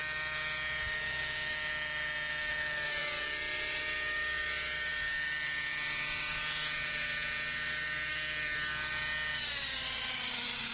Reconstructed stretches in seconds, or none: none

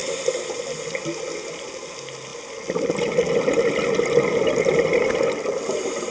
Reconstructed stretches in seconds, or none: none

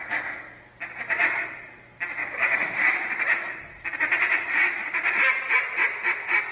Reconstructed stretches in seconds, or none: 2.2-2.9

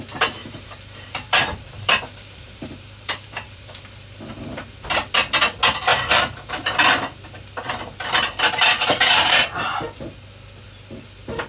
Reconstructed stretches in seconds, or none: 0.4-3.8; 5.9-6.5

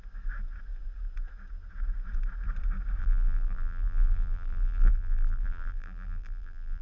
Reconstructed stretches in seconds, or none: 3.0-6.8

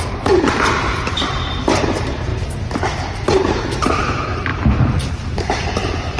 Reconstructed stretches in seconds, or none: 0.0-2.3; 3.1-6.2